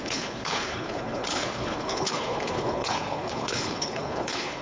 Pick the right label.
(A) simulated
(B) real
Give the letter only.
A